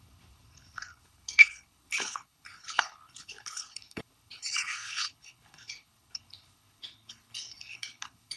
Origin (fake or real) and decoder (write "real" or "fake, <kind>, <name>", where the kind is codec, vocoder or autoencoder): fake, codec, HILCodec